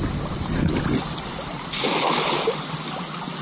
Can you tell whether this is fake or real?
real